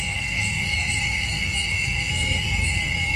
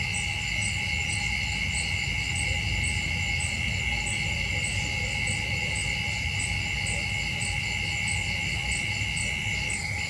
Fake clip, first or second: first